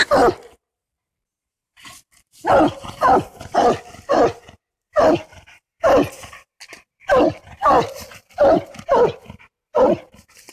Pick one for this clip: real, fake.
real